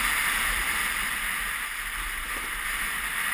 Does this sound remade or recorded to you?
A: recorded